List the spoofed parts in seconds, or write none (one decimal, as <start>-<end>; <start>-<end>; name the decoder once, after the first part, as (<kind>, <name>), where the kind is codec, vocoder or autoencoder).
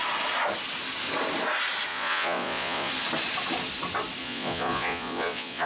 1.9-2.9 (vocoder, Vocos); 4.2-5.7